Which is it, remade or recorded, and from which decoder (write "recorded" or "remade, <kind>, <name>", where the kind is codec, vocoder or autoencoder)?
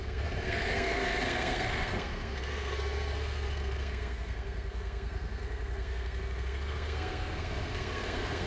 remade, codec, SNAC